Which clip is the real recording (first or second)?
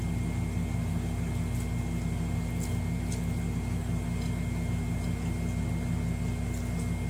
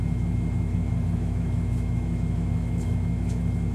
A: first